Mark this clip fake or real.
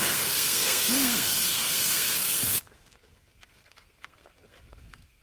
fake